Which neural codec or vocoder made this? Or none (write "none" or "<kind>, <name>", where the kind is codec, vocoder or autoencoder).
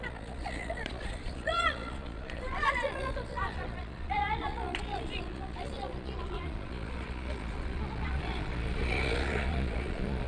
vocoder, Vocos